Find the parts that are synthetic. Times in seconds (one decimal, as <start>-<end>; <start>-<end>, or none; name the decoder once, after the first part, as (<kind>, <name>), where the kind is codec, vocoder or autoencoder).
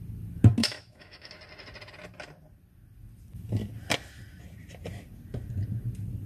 0.6-1.3 (autoencoder, DAC-VAE)